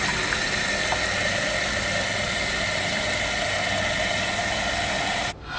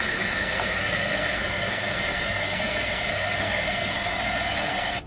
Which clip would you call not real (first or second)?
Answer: second